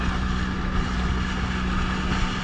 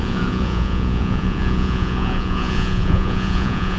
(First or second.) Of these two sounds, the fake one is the second